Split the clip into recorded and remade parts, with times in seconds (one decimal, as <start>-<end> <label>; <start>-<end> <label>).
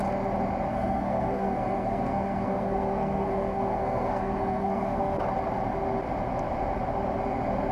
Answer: 0.0-0.7 recorded; 0.7-5.2 remade; 5.2-7.7 recorded